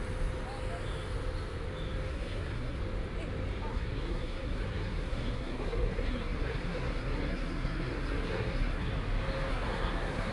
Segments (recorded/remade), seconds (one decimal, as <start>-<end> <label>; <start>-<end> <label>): 0.0-2.1 recorded; 2.1-2.8 remade; 2.8-3.7 recorded; 3.7-8.9 remade; 8.9-9.5 recorded; 9.5-10.3 remade